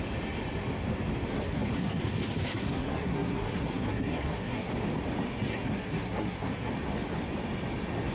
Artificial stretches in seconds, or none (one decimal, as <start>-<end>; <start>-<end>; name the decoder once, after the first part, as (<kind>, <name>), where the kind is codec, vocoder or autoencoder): 1.3-2.0 (codec, SNAC); 2.5-4.7; 5.5-6.7